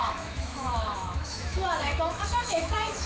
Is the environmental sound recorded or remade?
remade